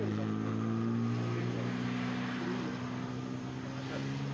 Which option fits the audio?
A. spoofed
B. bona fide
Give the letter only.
B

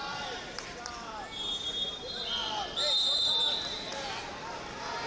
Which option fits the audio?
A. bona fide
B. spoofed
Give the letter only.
A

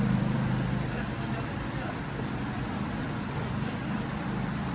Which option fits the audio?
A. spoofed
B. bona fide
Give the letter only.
A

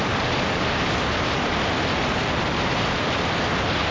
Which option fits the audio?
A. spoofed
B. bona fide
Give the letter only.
B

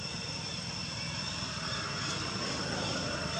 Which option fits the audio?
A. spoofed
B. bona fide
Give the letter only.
B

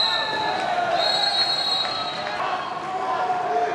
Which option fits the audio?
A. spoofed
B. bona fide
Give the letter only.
B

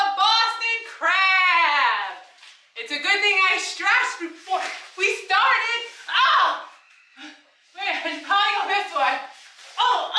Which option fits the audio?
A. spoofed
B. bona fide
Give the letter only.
B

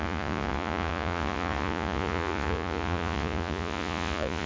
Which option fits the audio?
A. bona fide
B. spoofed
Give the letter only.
B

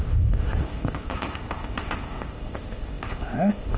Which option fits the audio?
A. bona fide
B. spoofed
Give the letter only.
B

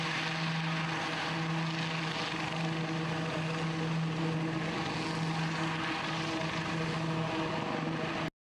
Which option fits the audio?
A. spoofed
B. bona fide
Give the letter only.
B